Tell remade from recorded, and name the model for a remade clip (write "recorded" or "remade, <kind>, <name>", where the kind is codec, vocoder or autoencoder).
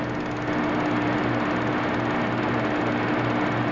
recorded